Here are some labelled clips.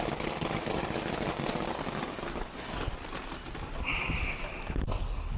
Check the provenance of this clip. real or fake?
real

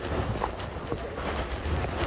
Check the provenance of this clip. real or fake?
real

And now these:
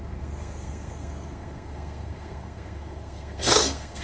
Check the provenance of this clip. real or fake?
fake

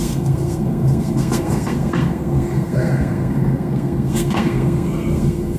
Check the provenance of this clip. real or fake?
fake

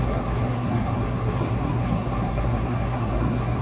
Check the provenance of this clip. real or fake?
fake